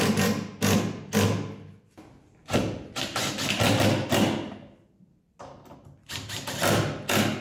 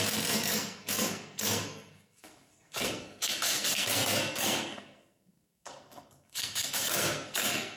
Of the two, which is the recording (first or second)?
first